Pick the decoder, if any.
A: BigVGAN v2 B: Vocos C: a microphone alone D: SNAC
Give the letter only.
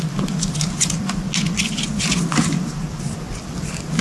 C